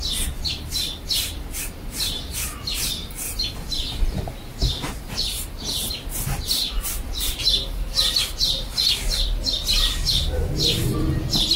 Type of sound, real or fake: real